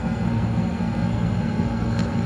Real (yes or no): no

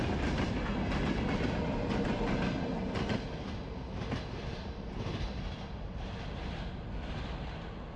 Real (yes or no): yes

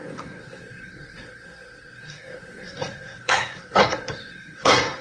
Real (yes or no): no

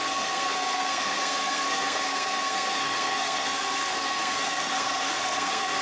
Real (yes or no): no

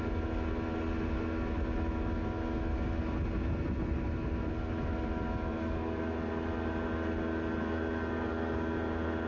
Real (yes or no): yes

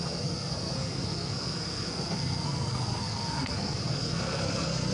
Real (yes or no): no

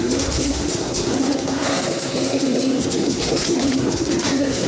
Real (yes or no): no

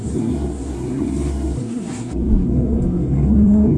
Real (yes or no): no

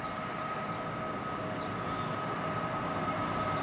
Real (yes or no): yes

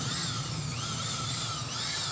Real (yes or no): yes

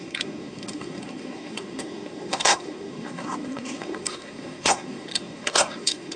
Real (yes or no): no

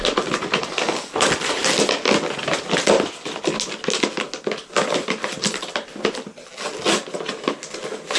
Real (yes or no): yes